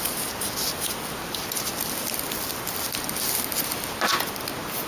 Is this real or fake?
real